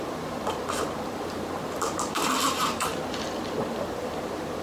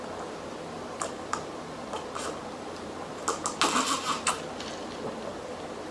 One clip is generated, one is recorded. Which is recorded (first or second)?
second